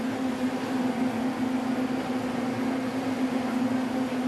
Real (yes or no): yes